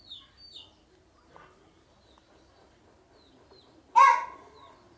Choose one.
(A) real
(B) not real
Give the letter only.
A